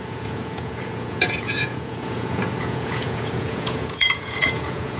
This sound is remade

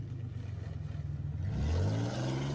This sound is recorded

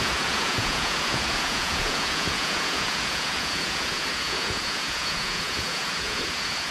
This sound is remade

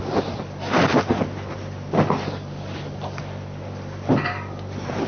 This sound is recorded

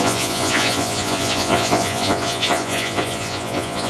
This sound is remade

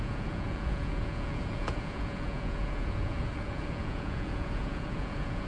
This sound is remade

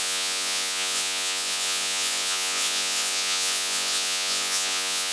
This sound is remade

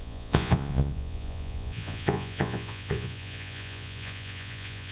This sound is remade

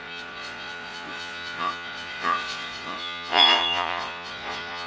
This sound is remade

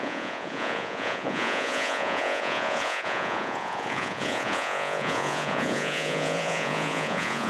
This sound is remade